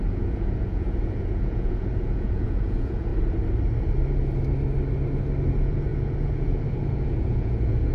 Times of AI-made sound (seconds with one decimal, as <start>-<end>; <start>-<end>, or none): 0.0-3.1; 5.5-7.9